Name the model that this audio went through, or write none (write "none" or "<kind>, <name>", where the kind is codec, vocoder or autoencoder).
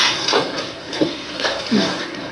codec, SNAC